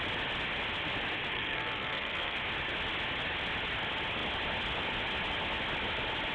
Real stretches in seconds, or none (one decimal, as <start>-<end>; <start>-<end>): 0.0-1.3; 2.4-6.3

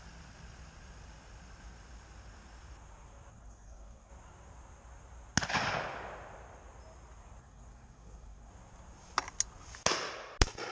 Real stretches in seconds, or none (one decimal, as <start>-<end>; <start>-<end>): 0.0-3.3; 4.1-7.4; 8.5-10.7